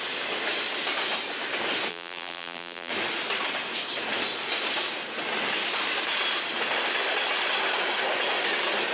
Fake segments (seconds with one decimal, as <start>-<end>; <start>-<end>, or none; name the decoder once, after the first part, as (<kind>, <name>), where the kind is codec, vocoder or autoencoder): 1.9-2.9 (vocoder, BigVGAN v2)